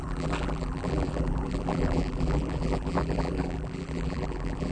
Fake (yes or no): yes